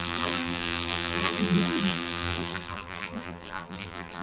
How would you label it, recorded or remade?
remade